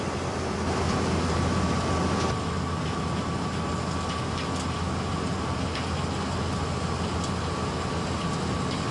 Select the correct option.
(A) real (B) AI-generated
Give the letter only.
A